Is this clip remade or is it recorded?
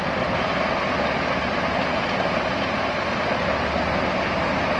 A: recorded